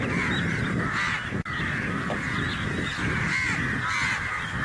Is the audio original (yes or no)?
yes